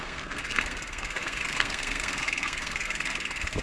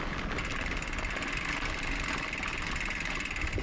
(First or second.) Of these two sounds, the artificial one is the first